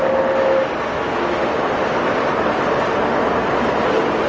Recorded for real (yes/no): yes